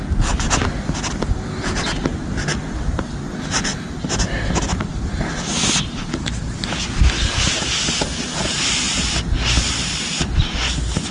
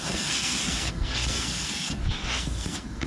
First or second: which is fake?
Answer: second